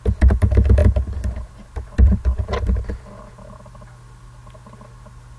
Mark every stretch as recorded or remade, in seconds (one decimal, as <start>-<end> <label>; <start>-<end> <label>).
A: 0.0-5.4 recorded